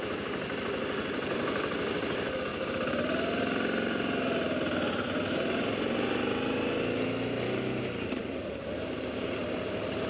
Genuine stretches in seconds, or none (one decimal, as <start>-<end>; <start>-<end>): 2.5-7.8